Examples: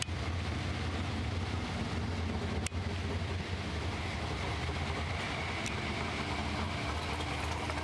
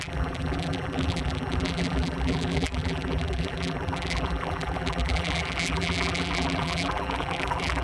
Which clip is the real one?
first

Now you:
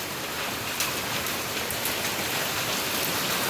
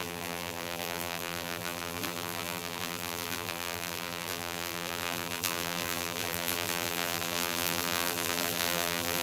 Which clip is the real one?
first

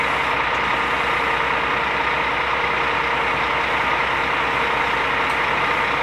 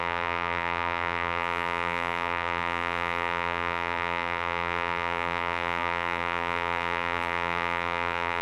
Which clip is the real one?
first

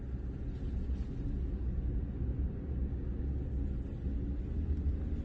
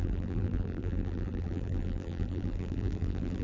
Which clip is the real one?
first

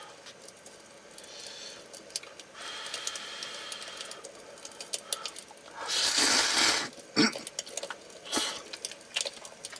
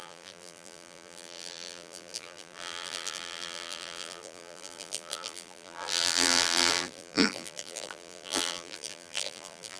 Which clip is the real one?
first